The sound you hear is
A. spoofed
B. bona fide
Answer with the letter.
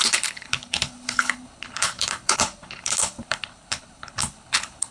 A